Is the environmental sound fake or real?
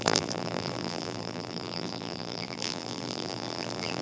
fake